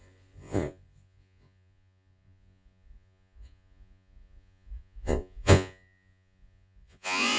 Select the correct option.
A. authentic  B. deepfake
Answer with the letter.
B